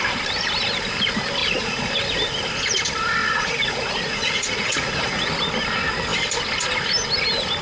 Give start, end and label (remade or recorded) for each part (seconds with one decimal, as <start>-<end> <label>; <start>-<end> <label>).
0.0-1.4 recorded; 1.4-1.9 remade; 1.9-3.2 recorded; 3.2-5.3 remade; 5.3-7.6 recorded